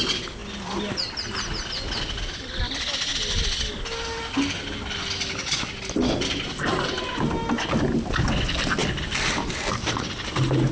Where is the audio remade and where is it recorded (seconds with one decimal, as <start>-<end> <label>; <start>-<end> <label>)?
0.0-10.7 recorded